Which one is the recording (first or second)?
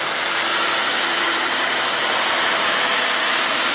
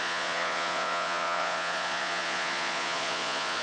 first